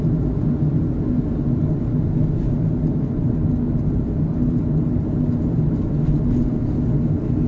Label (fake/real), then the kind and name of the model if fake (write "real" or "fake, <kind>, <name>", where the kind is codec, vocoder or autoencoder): real